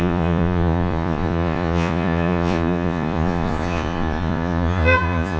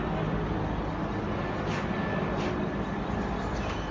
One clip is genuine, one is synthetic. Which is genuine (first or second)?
second